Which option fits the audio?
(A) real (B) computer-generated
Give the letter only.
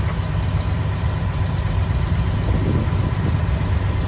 A